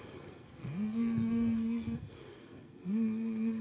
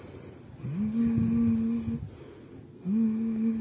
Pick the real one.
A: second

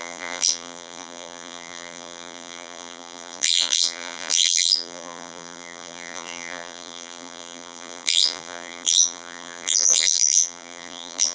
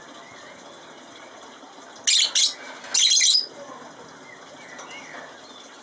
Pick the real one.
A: second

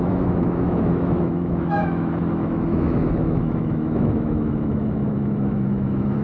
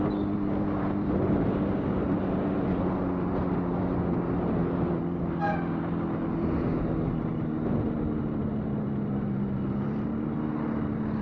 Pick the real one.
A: second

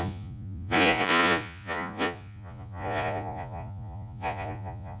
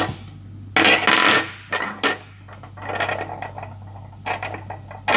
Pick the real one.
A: second